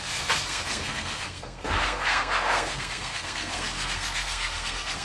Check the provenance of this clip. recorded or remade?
remade